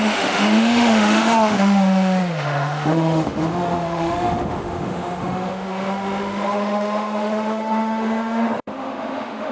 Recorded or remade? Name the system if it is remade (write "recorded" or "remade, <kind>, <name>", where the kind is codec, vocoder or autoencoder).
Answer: remade, autoencoder, DAC-VAE